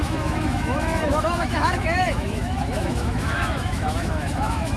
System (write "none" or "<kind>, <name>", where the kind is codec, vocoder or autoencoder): autoencoder, DAC-VAE